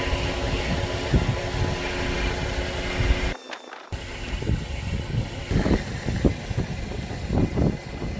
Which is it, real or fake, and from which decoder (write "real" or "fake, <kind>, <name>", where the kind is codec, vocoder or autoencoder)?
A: real